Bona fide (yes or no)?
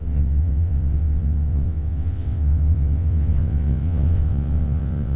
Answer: no